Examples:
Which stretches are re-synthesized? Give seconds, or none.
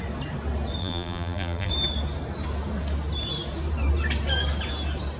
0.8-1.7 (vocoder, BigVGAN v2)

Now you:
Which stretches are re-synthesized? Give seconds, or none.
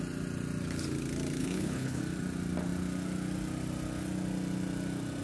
1.4-2.0 (codec, HILCodec)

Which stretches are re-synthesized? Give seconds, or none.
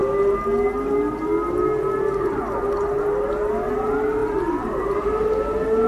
none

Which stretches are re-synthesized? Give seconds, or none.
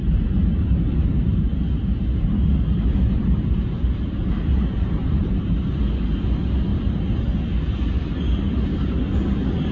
0.5-5.6 (vocoder, BigVGAN v2); 6.7-7.2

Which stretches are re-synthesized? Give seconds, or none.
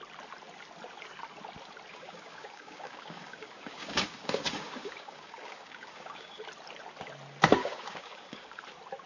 1.9-6.4 (codec, DAC); 7.6-8.6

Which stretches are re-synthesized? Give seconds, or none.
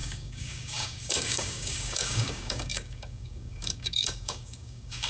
0.0-5.1 (codec, DAC)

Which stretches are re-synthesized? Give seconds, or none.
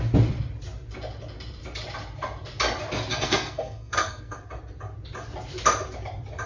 3.1-4.4 (codec, SNAC)